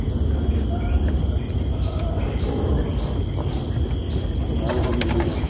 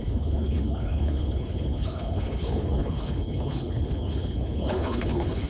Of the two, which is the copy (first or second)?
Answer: second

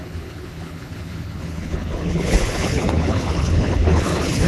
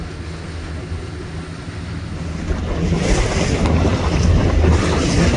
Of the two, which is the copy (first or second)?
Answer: first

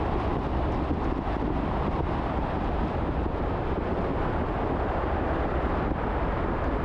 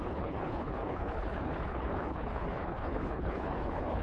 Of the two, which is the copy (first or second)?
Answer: second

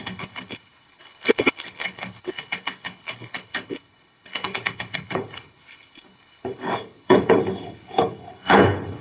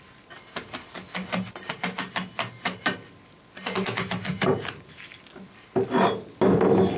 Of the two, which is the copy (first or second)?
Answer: first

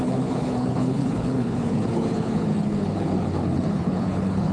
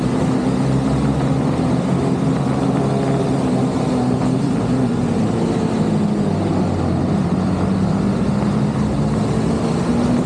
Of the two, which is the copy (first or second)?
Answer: first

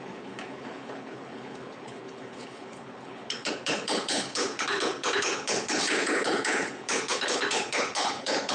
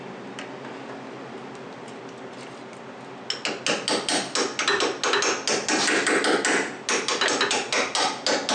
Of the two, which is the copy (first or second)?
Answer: first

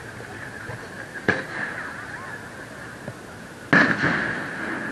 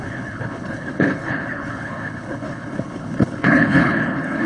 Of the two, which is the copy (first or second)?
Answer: second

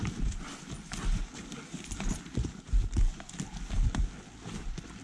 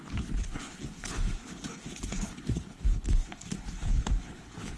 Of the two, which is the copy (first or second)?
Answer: second